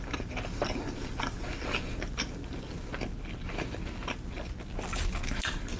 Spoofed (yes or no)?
no